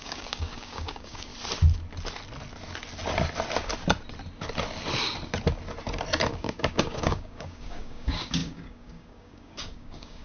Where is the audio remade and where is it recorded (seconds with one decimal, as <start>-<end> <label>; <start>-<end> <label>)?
0.0-1.3 remade; 1.3-6.3 recorded; 6.3-10.2 remade